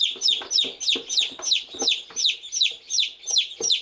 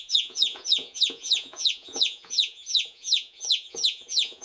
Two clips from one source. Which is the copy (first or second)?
second